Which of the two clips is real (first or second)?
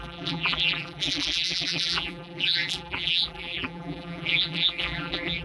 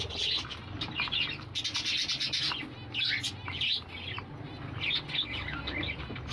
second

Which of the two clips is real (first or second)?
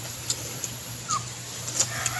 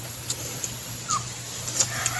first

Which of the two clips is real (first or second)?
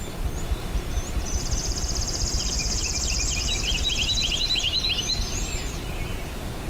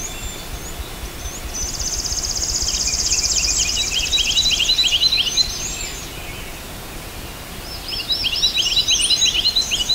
second